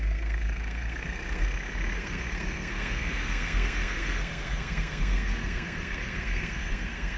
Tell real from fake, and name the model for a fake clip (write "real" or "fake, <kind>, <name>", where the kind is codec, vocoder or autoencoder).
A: fake, codec, SNAC